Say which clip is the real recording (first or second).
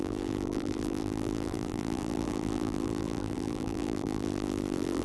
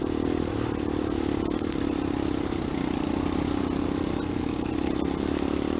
second